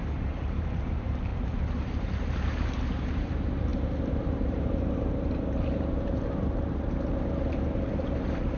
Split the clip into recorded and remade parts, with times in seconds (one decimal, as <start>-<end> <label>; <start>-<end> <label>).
0.0-8.6 remade